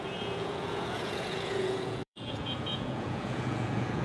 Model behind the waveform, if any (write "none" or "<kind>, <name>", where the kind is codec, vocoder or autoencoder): vocoder, Vocos